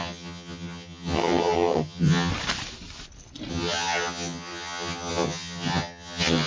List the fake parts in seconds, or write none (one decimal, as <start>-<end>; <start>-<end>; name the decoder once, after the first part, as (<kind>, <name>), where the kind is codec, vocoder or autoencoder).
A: 0.0-2.3 (vocoder, HiFi-GAN); 3.5-6.5